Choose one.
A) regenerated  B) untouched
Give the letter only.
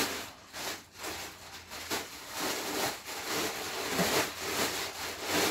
A